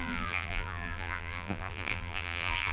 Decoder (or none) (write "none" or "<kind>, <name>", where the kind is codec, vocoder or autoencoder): vocoder, BigVGAN v2